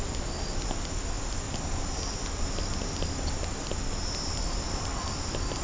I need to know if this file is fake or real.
real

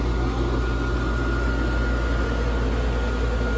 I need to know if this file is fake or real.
real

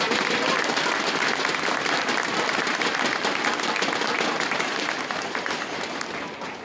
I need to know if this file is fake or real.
real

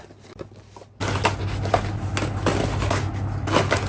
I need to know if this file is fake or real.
real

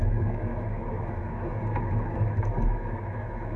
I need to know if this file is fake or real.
fake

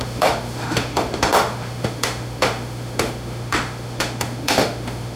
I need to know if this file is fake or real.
fake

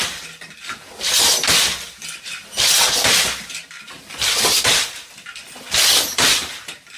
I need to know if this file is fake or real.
real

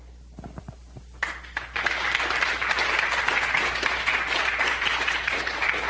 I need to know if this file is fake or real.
real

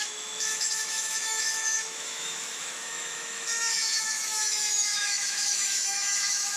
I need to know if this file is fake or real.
fake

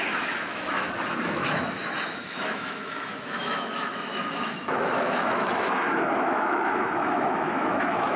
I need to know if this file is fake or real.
fake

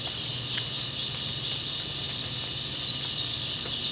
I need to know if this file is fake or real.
real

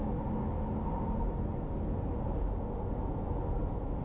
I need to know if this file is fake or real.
real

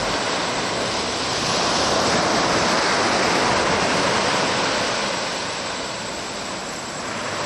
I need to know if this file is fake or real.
real